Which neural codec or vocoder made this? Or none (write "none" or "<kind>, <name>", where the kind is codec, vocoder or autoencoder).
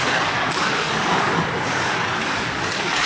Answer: codec, DAC